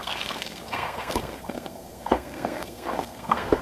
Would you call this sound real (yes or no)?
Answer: no